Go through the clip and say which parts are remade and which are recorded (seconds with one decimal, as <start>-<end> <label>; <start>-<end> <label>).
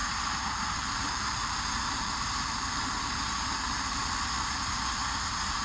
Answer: 0.0-5.6 remade